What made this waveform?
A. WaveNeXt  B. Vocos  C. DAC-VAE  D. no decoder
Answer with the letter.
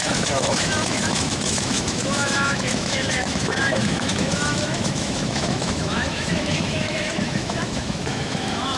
C